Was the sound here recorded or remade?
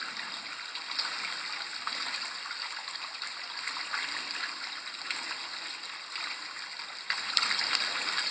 recorded